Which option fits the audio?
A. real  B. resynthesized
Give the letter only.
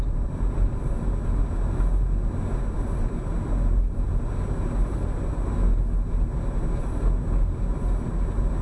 A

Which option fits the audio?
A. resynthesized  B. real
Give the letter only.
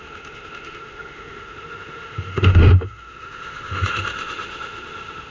A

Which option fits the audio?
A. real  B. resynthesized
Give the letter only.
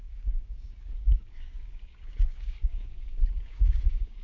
B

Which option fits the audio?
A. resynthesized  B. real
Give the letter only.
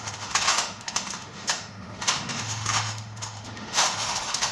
A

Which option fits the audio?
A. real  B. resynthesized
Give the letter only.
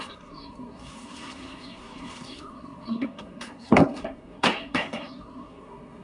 B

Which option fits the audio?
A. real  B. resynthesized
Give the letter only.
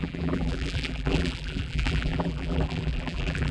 B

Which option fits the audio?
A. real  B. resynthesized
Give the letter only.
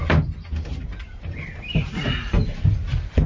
A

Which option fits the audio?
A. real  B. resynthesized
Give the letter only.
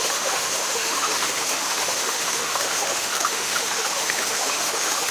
B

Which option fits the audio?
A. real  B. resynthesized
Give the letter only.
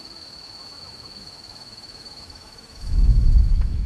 B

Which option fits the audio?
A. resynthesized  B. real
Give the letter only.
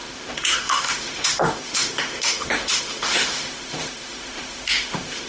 A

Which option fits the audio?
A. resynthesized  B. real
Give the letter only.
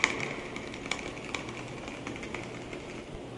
B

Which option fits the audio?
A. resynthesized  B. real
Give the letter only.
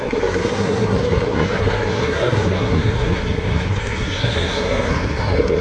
A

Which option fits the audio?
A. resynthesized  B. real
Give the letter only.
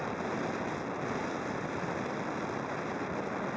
B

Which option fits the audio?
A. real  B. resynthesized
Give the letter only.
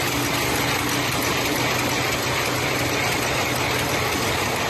A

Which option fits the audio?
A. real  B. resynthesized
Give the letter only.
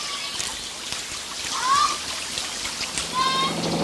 A